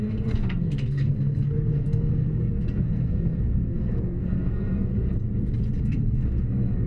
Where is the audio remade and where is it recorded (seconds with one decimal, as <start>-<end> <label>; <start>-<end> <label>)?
0.0-4.9 remade; 4.9-5.8 recorded; 5.8-6.9 remade